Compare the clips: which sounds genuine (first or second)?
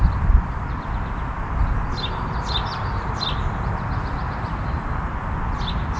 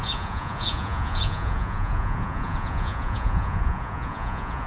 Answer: first